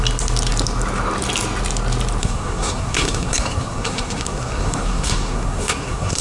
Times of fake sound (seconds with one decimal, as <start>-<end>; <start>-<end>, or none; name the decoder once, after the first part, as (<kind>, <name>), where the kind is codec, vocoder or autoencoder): 2.2-6.2 (codec, SNAC)